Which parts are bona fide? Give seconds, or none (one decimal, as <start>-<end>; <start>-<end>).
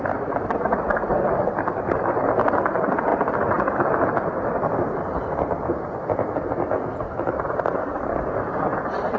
0.0-9.2